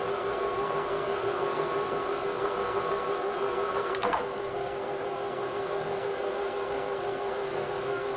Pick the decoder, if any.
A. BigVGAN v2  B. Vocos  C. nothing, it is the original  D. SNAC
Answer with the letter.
D